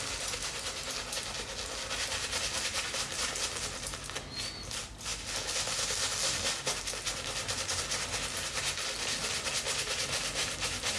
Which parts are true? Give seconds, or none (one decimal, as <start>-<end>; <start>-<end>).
0.0-11.0